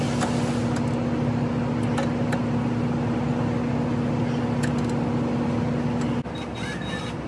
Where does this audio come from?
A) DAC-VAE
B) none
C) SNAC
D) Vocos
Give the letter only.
B